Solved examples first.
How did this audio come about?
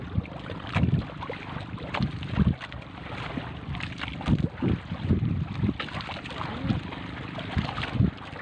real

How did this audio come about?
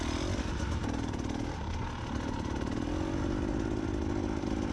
real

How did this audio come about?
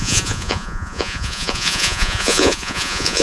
fake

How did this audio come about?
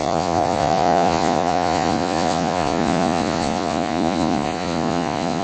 fake